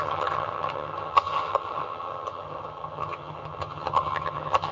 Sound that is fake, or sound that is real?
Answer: fake